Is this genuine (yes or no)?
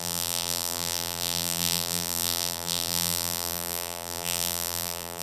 no